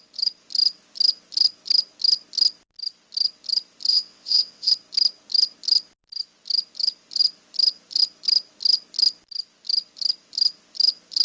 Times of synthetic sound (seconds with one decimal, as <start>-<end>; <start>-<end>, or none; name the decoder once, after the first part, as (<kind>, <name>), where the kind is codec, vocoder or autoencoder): 3.9-4.7 (vocoder, WaveNeXt)